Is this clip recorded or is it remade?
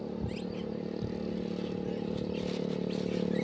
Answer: recorded